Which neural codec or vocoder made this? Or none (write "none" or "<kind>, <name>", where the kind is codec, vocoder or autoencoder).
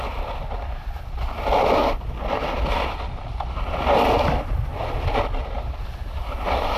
none